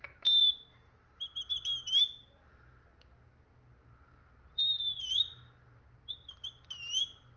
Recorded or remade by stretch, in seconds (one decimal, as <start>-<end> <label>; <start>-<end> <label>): 0.0-7.4 recorded